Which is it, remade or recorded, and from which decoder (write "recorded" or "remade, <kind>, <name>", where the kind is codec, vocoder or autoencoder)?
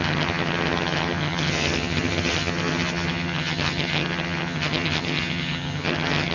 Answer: remade, vocoder, HiFi-GAN